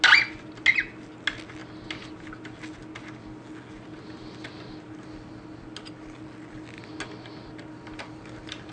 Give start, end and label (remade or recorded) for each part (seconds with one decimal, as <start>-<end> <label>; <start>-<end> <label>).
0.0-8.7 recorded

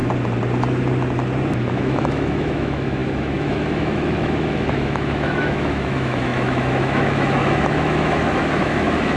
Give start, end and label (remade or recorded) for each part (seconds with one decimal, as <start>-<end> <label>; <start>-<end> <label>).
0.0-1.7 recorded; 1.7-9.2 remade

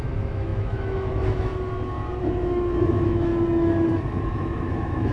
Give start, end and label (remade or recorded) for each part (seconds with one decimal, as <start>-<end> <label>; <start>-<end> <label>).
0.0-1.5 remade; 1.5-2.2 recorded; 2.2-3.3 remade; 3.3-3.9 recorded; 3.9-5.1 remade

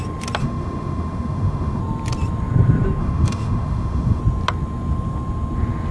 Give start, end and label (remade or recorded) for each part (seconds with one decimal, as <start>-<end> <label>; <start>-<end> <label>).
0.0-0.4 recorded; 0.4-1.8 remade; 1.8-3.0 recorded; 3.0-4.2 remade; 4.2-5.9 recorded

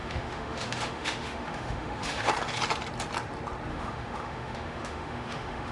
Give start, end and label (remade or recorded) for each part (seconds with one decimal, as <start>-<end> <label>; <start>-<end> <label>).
0.0-2.3 remade; 2.3-3.7 recorded; 3.7-5.7 remade

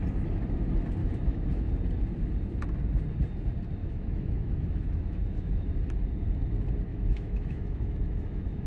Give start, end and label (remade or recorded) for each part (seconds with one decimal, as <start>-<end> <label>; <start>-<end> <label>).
0.0-1.0 recorded; 1.0-1.6 remade; 1.6-3.8 recorded; 3.8-5.7 remade; 5.7-6.9 recorded; 6.9-8.7 remade

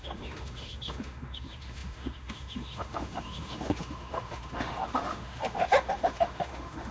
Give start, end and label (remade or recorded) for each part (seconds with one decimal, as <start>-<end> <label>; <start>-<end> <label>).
0.0-6.9 remade

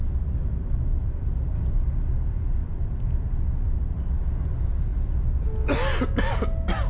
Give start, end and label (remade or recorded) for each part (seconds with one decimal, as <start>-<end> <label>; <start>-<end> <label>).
0.0-6.9 recorded